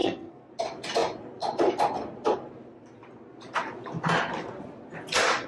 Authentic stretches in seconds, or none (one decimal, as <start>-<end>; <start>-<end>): 0.5-5.5

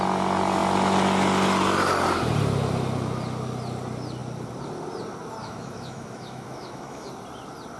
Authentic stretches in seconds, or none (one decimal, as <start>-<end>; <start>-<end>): 0.0-5.4; 7.1-7.8

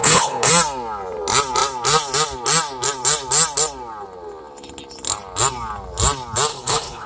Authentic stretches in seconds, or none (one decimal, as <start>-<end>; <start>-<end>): 0.5-6.5